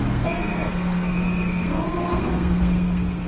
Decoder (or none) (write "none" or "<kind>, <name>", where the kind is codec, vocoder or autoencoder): codec, SNAC